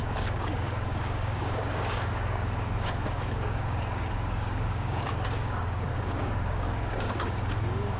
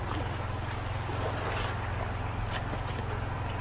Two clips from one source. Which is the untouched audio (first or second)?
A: second